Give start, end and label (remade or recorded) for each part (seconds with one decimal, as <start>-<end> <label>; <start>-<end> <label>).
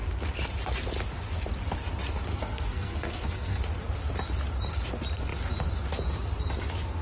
0.0-2.3 recorded; 2.3-3.6 remade; 3.6-7.0 recorded